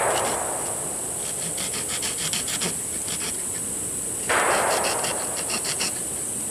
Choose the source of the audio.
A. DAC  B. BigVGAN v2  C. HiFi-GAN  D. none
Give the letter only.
D